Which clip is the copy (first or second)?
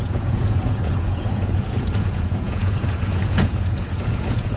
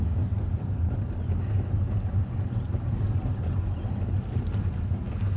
first